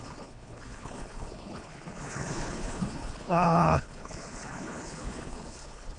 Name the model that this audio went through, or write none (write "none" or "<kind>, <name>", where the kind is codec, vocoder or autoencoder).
codec, HILCodec